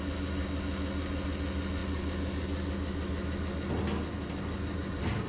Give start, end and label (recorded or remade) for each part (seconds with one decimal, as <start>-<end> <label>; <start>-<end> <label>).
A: 0.0-5.3 recorded